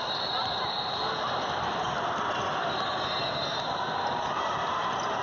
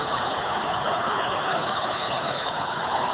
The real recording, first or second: first